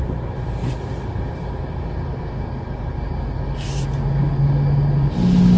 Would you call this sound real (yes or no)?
yes